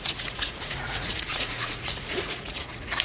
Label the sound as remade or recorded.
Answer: remade